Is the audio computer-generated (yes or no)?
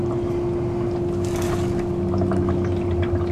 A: no